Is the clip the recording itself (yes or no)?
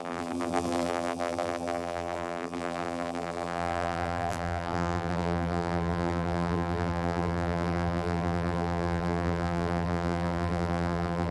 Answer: no